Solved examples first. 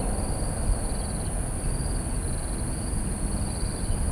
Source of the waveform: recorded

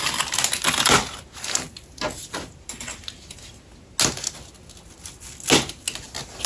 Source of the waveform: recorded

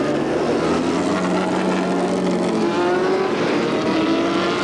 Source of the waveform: recorded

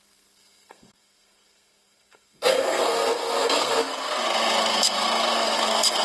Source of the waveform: remade